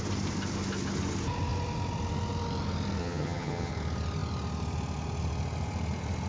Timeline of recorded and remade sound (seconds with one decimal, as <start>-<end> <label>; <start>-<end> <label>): 0.0-3.0 recorded; 3.0-3.7 remade; 3.7-6.3 recorded